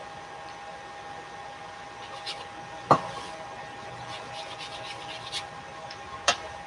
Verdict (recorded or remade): recorded